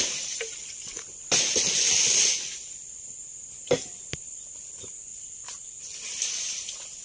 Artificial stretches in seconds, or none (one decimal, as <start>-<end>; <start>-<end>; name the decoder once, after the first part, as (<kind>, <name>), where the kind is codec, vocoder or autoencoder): none